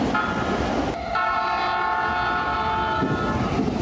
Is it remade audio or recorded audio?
recorded